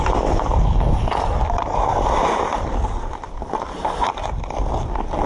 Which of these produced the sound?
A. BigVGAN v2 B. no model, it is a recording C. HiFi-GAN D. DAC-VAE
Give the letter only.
B